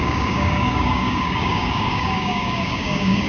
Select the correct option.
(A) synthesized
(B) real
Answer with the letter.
A